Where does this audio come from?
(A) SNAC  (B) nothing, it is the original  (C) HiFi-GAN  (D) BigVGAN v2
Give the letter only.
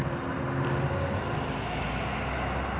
B